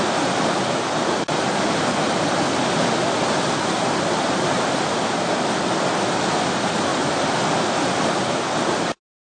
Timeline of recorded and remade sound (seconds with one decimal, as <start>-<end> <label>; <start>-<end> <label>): 0.0-9.3 recorded

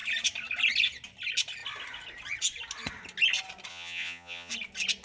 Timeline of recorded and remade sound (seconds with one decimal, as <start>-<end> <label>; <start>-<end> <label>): 0.0-3.7 recorded; 3.7-4.5 remade; 4.5-5.0 recorded

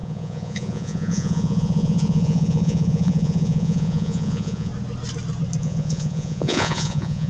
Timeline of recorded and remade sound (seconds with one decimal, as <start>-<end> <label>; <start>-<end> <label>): 0.0-4.7 remade; 4.7-5.6 recorded; 5.6-7.3 remade

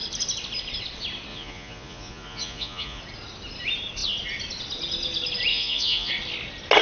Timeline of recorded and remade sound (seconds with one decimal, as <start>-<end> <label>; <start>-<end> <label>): 0.0-1.3 recorded; 1.3-3.0 remade; 3.0-5.5 recorded; 5.5-6.1 remade; 6.1-6.8 recorded

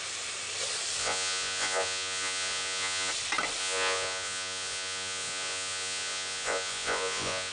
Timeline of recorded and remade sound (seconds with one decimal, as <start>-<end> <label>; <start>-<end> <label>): 0.0-1.0 recorded; 1.0-3.1 remade; 3.1-3.6 recorded; 3.6-7.5 remade